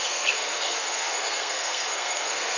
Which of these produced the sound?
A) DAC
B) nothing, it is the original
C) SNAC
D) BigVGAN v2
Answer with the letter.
C